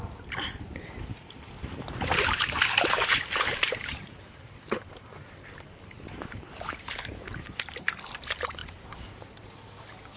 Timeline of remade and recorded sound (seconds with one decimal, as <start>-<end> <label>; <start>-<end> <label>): 0.0-10.2 remade